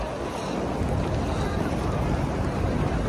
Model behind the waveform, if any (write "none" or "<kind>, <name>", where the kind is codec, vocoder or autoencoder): none